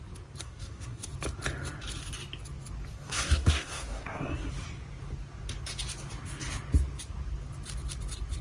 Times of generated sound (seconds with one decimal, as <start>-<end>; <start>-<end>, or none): 0.4-1.1; 2.9-4.5